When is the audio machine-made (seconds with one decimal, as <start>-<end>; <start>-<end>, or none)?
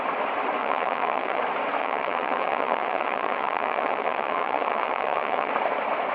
0.6-1.4; 1.8-5.5